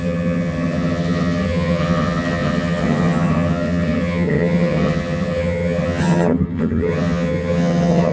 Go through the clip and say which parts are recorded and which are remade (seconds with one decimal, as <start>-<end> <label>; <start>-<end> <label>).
0.0-8.1 remade

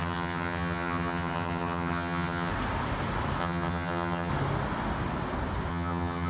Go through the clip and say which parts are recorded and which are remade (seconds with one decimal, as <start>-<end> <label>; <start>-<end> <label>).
0.0-2.5 remade; 2.5-3.4 recorded; 3.4-4.3 remade; 4.3-5.7 recorded; 5.7-6.3 remade

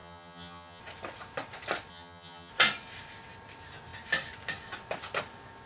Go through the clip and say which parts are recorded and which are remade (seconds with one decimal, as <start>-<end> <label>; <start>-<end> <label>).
0.0-0.8 remade; 0.8-1.9 recorded; 1.9-2.5 remade; 2.5-5.7 recorded

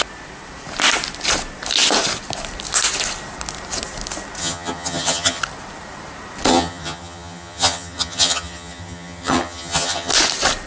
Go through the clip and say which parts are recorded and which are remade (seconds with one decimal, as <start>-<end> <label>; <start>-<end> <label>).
0.0-4.4 recorded; 4.4-5.4 remade; 5.4-6.5 recorded; 6.5-10.1 remade; 10.1-10.7 recorded

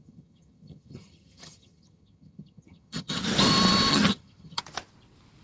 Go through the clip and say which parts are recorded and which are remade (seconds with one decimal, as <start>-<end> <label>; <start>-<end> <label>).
0.0-3.2 remade; 3.2-3.9 recorded; 3.9-4.6 remade; 4.6-5.4 recorded

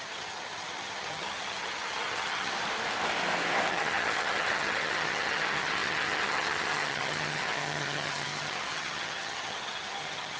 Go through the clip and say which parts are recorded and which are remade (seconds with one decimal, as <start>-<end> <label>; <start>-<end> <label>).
0.0-2.5 remade; 2.5-3.7 recorded; 3.7-10.4 remade

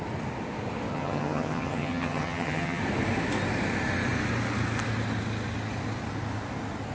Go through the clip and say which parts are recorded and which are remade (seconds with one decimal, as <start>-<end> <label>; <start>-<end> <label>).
0.0-0.9 recorded; 0.9-2.8 remade; 2.8-6.9 recorded